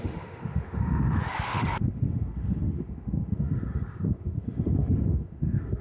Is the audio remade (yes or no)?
yes